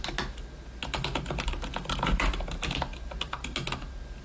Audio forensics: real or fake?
real